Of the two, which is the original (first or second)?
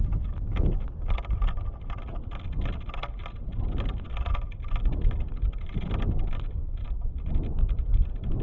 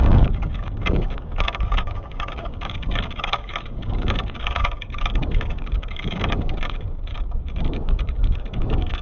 first